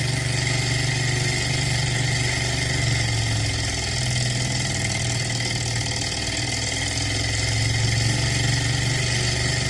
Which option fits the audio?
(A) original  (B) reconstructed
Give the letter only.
A